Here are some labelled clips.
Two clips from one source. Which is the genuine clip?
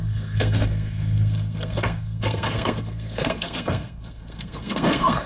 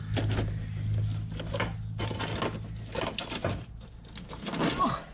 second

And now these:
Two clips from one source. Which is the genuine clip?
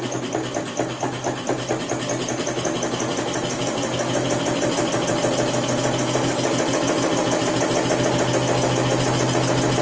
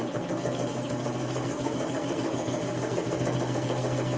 first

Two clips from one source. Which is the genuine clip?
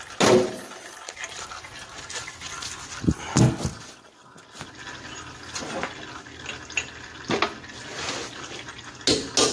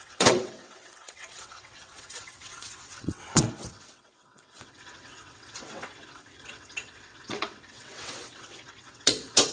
first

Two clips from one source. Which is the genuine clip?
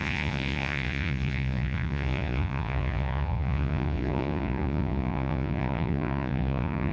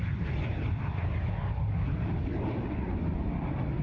second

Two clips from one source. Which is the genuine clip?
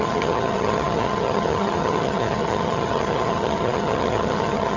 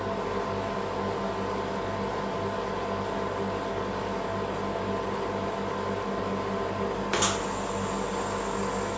second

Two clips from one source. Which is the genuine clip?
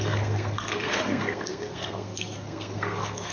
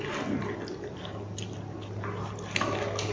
second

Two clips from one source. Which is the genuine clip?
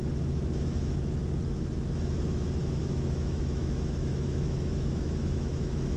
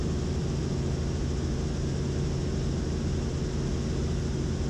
second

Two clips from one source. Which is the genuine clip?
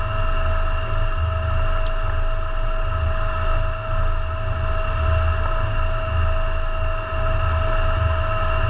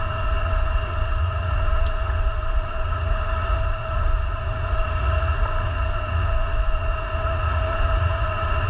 first